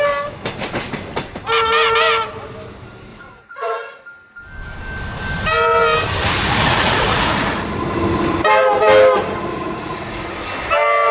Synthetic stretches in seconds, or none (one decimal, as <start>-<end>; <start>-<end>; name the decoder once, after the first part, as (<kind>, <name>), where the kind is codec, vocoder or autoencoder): 3.1-4.0 (vocoder, Vocos); 6.2-7.8; 9.5-10.3